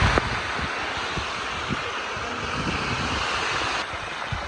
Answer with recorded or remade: recorded